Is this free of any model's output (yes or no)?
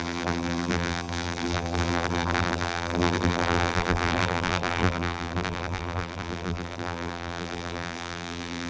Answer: no